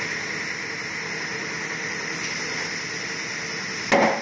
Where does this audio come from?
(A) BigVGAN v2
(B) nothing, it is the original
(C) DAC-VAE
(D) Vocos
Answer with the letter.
B